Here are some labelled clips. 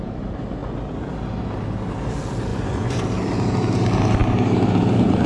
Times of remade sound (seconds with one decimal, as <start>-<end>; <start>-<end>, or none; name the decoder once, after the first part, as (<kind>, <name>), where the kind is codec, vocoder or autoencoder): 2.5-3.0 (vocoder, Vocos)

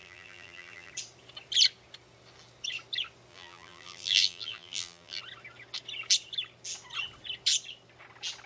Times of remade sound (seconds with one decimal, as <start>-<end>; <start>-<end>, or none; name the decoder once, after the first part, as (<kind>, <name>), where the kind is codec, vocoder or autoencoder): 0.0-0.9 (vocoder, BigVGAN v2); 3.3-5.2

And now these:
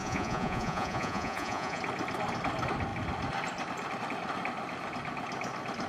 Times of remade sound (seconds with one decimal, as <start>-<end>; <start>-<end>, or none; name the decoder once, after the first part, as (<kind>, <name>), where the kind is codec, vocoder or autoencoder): 0.0-1.8 (vocoder, Vocos)

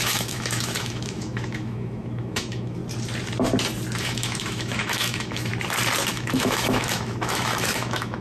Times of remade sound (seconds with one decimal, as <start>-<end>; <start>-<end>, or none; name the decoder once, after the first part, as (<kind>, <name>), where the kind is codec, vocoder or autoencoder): 0.0-2.8 (autoencoder, DAC-VAE); 4.0-5.5; 6.1-8.2

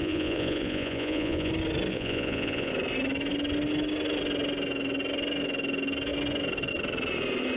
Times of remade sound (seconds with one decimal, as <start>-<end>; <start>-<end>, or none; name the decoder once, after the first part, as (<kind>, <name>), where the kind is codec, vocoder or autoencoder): 0.0-1.5 (vocoder, Vocos); 1.9-2.7

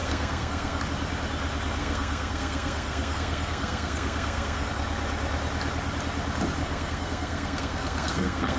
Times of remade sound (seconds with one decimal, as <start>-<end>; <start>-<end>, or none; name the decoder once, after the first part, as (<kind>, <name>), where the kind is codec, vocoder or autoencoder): 0.0-0.8 (codec, SNAC); 1.8-4.7; 6.6-8.6